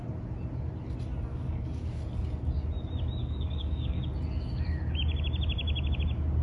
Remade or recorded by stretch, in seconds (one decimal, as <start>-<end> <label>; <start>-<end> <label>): 0.0-1.3 recorded; 1.3-2.0 remade; 2.0-3.2 recorded; 3.2-4.0 remade; 4.0-6.4 recorded